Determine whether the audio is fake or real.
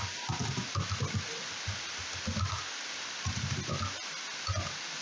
real